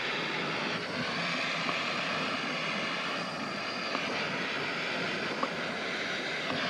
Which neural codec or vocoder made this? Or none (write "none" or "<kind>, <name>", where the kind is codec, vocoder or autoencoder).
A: none